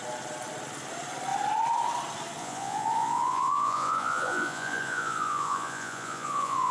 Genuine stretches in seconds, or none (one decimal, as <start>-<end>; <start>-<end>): 0.0-2.4